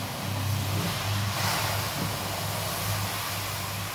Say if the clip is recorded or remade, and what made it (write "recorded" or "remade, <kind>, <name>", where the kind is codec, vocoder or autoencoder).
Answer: recorded